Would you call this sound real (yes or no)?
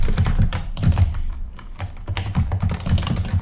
no